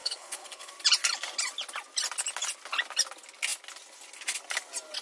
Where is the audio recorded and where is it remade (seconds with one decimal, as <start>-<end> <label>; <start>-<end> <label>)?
0.0-0.7 remade; 0.7-5.0 recorded